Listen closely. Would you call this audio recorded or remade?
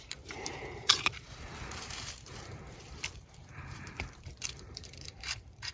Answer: remade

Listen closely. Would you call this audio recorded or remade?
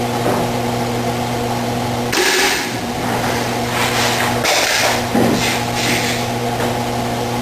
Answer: remade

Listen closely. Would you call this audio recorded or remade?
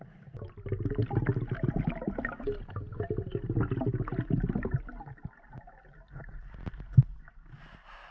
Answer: recorded